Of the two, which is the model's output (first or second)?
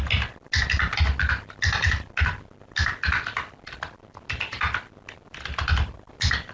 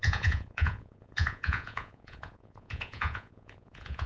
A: second